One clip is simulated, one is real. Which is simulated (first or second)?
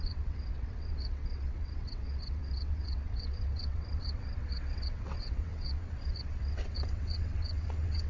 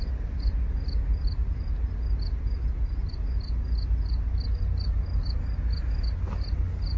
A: first